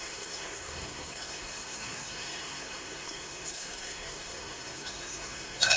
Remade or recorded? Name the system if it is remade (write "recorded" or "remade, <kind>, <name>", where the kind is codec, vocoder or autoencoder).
remade, codec, SNAC